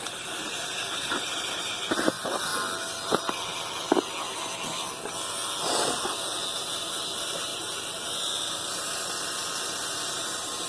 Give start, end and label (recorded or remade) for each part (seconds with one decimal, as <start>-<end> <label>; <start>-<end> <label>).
0.0-2.5 remade; 2.5-6.7 recorded; 6.7-10.7 remade